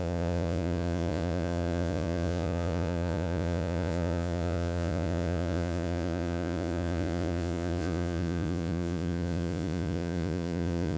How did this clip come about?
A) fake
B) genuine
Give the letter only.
A